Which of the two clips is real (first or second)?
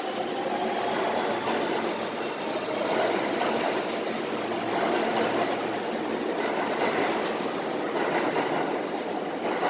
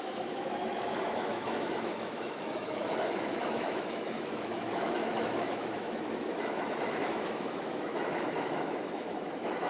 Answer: first